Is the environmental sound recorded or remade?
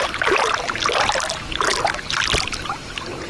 recorded